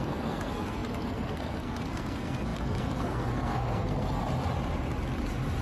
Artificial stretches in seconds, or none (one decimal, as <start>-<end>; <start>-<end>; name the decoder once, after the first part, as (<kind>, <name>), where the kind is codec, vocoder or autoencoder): 0.0-4.2 (codec, SNAC)